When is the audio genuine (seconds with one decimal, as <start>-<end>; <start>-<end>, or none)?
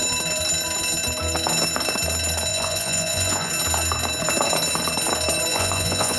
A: 0.0-2.5; 3.5-5.5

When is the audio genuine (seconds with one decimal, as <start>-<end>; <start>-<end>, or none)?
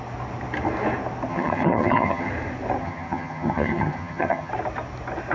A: 0.0-1.3; 2.3-2.8; 4.5-5.3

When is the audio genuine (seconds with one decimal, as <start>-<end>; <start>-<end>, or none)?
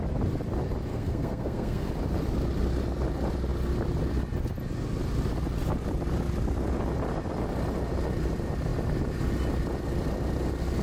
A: 0.0-0.9; 1.9-10.8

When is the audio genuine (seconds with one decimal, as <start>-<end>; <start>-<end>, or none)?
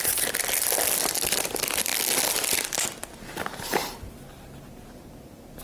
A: 0.0-5.6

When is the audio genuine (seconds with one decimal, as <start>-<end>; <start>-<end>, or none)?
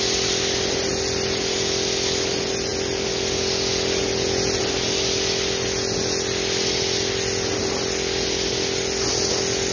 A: 0.0-9.7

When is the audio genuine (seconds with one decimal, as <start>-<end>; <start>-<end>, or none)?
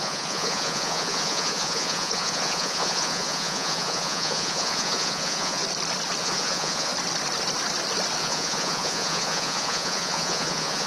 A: 5.6-6.2; 6.9-8.2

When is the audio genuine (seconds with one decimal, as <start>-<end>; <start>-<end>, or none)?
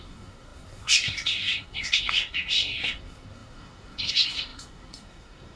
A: none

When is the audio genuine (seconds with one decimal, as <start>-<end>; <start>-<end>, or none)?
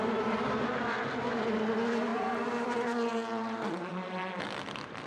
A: 0.0-2.1; 3.1-3.9